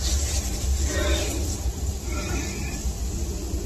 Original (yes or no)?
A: no